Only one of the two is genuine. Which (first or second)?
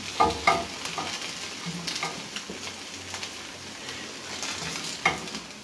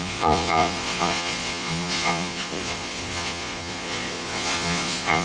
first